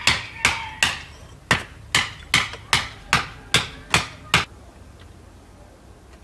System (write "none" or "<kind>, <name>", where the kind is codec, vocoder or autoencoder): none